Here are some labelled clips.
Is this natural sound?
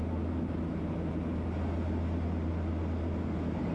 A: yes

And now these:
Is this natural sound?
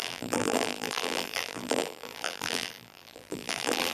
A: no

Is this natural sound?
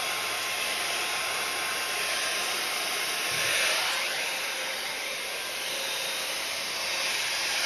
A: no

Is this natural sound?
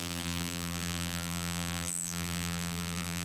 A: no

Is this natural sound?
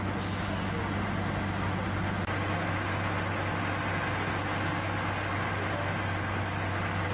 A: yes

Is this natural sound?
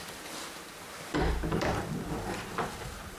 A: no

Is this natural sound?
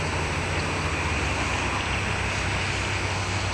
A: yes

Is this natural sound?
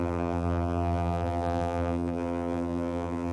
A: no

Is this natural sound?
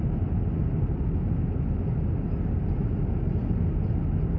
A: yes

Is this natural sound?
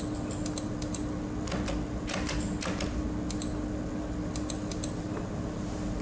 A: yes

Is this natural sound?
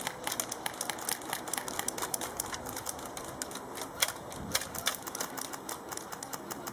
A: yes